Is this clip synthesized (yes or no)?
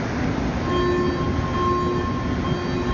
no